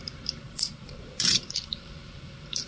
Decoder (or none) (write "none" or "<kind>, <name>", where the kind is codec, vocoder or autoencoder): vocoder, BigVGAN v2